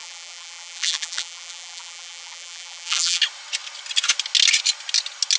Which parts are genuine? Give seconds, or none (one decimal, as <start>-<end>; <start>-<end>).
3.2-5.4